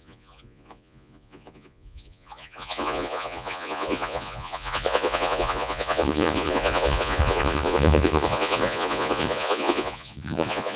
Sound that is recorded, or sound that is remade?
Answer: remade